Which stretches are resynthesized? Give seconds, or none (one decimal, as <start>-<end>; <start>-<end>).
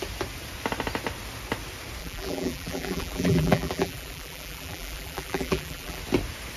2.0-6.0